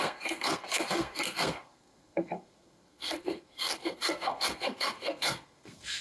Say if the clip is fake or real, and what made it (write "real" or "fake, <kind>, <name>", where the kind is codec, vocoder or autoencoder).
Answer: fake, codec, SNAC